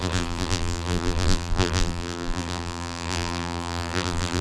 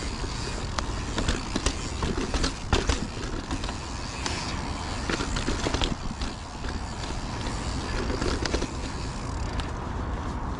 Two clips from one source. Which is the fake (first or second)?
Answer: first